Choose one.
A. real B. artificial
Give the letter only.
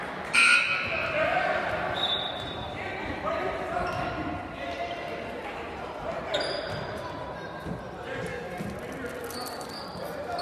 A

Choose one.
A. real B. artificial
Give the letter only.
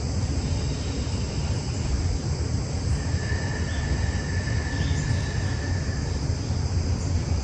A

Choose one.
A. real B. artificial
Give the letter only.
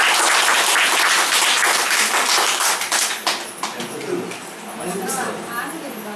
A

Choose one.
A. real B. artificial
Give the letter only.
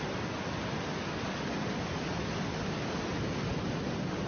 A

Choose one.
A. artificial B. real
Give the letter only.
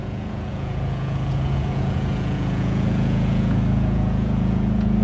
A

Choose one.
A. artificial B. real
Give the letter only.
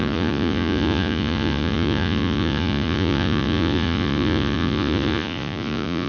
A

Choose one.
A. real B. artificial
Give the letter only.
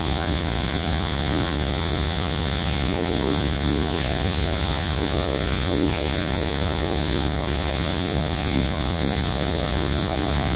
B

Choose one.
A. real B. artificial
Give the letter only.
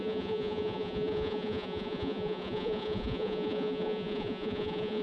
B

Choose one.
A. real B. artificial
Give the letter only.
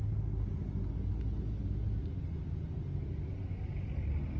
A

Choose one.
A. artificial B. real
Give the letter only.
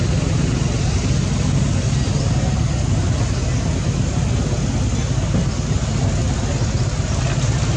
B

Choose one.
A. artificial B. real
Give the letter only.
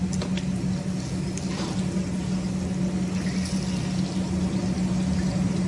B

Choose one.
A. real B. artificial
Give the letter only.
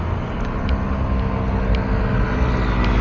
A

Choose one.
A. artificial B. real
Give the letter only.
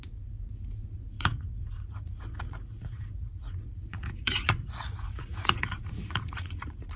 A